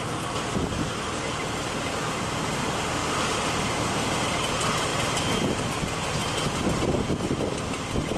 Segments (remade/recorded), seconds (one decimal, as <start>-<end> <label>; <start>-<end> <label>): 0.0-8.2 recorded